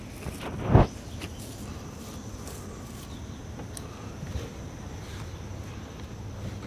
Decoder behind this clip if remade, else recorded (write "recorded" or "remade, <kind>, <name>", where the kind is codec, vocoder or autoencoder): recorded